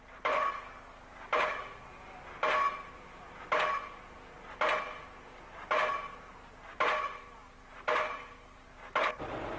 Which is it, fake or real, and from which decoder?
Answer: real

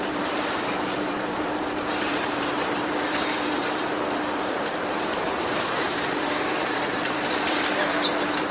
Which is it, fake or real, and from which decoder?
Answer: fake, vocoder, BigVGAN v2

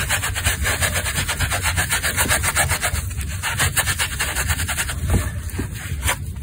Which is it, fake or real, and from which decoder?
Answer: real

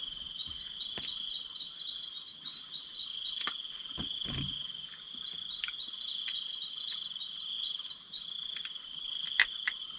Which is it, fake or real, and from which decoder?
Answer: real